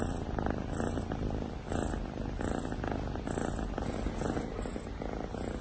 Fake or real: real